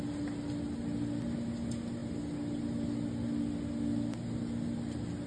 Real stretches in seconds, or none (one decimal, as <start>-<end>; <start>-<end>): 0.0-5.3